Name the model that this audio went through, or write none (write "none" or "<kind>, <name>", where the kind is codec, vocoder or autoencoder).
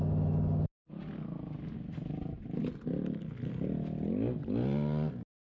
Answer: none